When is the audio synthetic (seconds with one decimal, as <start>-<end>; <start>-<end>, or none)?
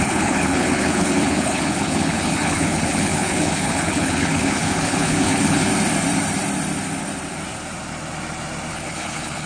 0.0-5.7; 8.7-9.5